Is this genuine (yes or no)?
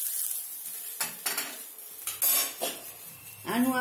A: yes